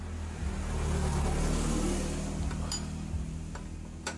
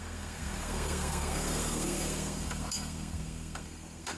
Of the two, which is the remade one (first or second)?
second